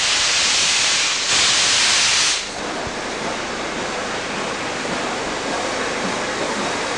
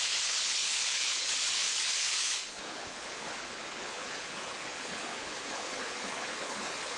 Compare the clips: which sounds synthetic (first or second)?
second